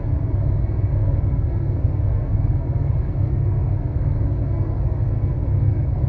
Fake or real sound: fake